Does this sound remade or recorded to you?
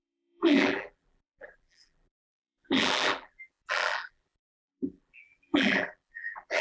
remade